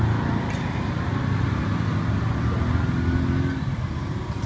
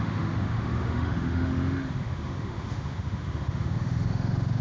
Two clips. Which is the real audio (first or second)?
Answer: first